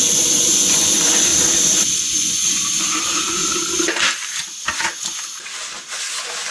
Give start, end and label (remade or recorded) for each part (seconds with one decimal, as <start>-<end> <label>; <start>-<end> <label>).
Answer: 0.0-1.3 remade; 1.3-1.8 recorded; 1.8-3.4 remade; 3.4-6.5 recorded